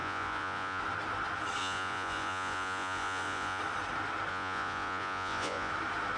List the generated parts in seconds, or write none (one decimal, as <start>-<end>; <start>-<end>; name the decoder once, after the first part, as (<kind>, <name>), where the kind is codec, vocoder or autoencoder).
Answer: 0.0-0.8 (vocoder, Vocos); 1.6-3.6; 4.3-5.7